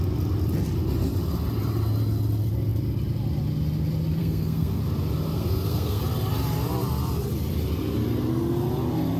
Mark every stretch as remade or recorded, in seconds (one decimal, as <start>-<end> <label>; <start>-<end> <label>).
0.0-4.2 recorded; 4.2-4.8 remade; 4.8-5.3 recorded; 5.3-6.0 remade; 6.0-9.2 recorded